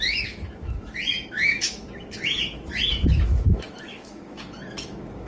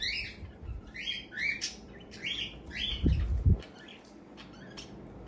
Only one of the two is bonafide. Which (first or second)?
second